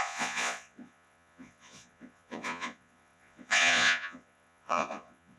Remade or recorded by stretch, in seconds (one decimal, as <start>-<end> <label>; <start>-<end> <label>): 0.0-5.4 remade